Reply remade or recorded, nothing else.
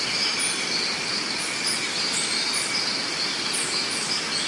recorded